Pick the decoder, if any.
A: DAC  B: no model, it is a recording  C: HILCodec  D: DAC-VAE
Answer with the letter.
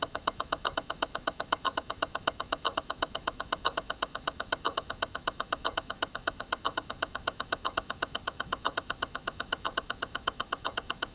D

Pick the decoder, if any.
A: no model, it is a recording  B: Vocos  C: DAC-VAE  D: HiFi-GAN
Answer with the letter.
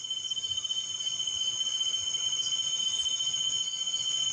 A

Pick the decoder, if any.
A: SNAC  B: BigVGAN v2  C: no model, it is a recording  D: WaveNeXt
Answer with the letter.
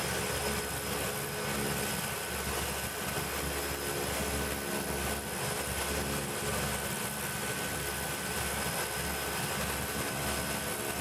C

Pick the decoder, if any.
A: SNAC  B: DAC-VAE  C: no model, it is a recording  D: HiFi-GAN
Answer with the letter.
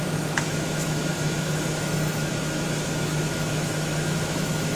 B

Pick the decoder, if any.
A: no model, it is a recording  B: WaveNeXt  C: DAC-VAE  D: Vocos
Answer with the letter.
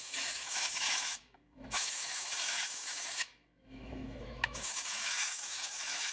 C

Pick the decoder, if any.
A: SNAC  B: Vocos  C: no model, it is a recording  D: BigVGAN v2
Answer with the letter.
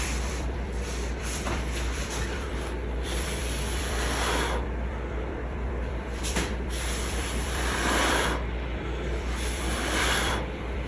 D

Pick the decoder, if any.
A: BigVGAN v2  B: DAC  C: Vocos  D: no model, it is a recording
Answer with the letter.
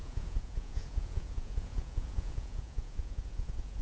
C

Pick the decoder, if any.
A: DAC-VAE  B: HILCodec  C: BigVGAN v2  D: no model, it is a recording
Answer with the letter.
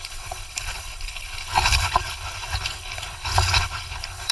B